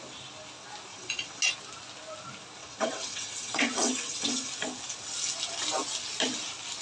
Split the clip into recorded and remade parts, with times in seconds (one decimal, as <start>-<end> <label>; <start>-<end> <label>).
0.0-0.9 recorded; 0.9-1.4 remade; 1.4-2.6 recorded; 2.6-4.5 remade; 4.5-6.8 recorded